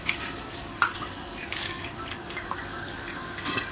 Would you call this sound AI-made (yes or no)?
yes